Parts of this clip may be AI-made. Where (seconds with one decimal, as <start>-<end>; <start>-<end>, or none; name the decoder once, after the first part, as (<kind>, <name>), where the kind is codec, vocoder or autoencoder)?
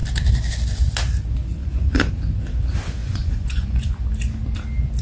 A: 1.6-2.1 (vocoder, Vocos); 3.0-3.9